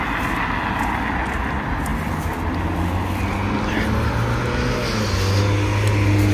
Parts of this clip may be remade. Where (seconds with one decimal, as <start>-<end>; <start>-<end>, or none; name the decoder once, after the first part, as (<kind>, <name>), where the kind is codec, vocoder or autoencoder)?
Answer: none